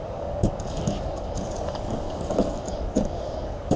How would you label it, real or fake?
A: fake